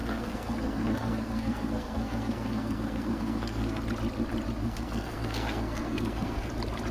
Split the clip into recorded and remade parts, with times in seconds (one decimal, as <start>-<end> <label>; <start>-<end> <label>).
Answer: 0.0-3.8 remade; 3.8-4.6 recorded; 4.6-6.5 remade; 6.5-6.9 recorded